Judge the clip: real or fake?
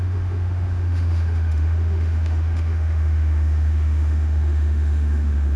fake